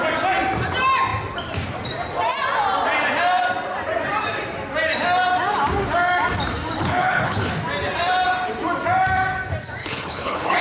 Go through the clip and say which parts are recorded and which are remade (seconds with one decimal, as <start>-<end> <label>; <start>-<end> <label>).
0.0-6.8 recorded; 6.8-7.5 remade; 7.5-9.8 recorded; 9.8-10.6 remade